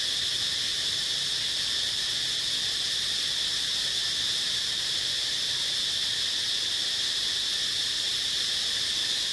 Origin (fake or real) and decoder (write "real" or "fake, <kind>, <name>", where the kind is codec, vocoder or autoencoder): real